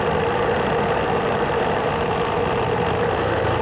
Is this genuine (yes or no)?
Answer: yes